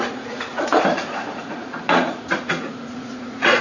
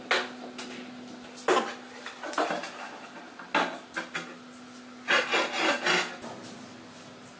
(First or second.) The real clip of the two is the second